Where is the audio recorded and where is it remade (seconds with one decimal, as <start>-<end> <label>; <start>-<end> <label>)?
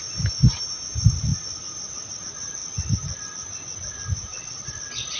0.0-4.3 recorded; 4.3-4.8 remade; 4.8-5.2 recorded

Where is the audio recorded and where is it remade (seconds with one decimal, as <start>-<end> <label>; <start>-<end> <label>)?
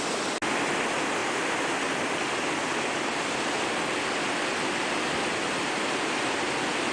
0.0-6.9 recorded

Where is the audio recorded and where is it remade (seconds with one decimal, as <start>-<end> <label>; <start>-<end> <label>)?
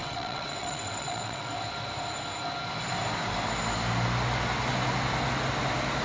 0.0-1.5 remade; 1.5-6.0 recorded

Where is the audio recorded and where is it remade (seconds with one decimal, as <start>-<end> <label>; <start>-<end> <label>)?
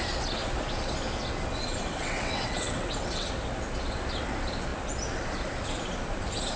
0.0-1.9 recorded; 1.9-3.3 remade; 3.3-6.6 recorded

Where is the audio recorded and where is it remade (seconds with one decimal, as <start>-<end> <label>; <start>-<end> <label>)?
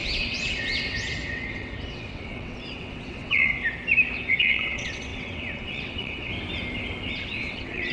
0.0-3.5 remade; 3.5-4.4 recorded; 4.4-6.3 remade; 6.3-7.1 recorded; 7.1-7.9 remade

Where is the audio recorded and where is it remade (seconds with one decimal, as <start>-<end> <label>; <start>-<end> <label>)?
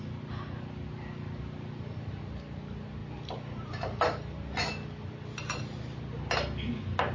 0.0-7.1 recorded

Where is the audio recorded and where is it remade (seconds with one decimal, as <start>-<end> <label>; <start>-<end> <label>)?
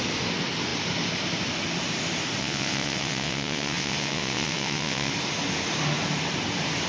0.0-2.4 recorded; 2.4-5.1 remade; 5.1-6.9 recorded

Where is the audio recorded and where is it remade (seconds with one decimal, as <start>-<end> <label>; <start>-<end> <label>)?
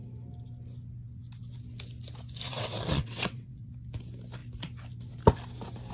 0.0-2.5 recorded; 2.5-3.7 remade; 3.7-5.9 recorded